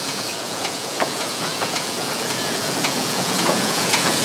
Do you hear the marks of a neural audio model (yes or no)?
yes